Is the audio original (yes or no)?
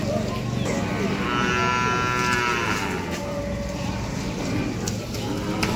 yes